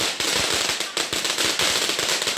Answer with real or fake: real